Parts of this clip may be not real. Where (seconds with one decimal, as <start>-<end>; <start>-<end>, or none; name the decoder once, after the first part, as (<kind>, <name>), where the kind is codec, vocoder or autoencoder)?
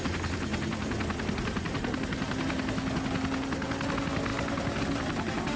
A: none